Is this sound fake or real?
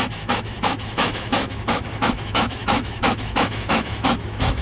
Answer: fake